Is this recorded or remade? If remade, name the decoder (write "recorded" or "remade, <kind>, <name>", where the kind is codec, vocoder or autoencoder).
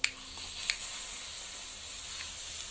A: recorded